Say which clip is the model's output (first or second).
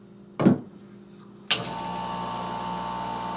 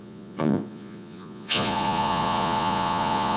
second